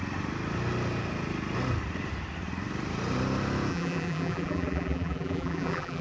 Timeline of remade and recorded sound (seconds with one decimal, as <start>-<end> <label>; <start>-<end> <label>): 0.0-3.7 recorded; 3.7-6.0 remade